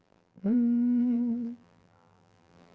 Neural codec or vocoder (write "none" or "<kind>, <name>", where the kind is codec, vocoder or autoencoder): vocoder, BigVGAN v2